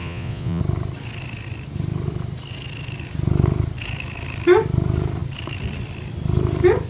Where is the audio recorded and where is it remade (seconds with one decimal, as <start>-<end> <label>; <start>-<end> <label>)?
0.0-0.6 remade; 0.6-6.9 recorded